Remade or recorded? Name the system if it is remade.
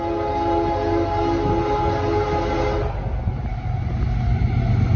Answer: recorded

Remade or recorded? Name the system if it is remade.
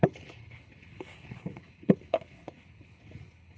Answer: remade, codec, HILCodec